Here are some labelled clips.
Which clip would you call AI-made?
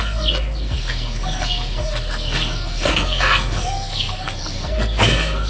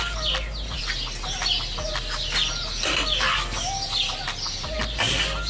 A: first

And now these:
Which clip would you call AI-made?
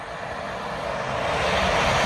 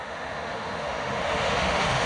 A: second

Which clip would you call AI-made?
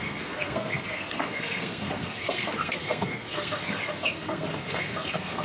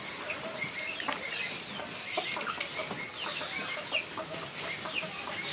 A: first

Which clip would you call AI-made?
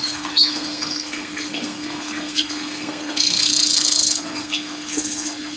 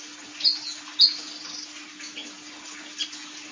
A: first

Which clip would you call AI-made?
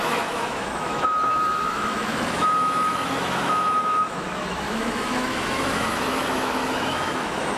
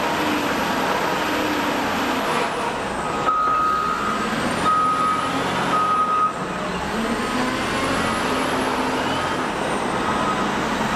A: first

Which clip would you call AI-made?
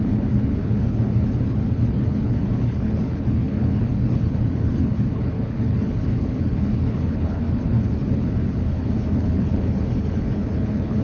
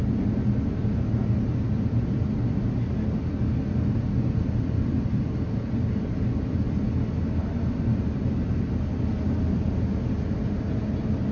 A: first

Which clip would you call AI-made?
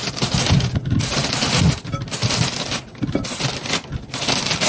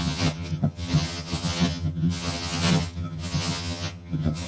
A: second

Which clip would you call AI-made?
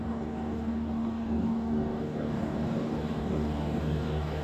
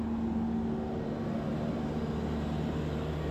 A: first